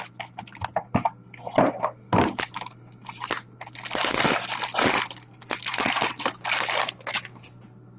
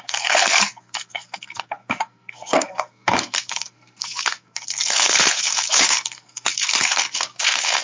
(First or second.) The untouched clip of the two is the first